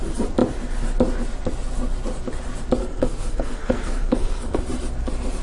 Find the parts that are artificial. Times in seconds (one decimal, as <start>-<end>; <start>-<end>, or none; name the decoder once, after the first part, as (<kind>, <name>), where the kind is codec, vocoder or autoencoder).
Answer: 2.8-4.6 (codec, SNAC)